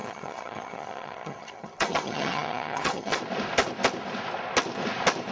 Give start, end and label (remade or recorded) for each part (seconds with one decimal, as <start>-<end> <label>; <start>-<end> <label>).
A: 0.0-3.2 remade; 3.2-5.3 recorded